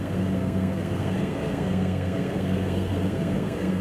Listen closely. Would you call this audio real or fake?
fake